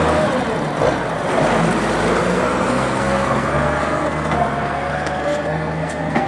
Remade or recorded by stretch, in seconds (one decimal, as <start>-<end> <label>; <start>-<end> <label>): 0.0-2.2 recorded; 2.2-6.3 remade